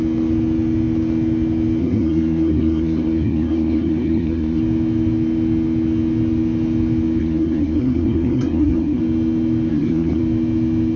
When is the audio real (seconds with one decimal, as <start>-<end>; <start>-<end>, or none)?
0.0-1.8; 4.6-7.2; 9.0-9.7; 10.2-11.0